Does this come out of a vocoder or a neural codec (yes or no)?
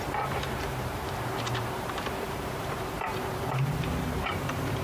yes